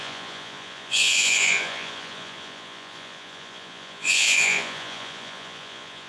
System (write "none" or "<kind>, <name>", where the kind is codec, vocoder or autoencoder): vocoder, Vocos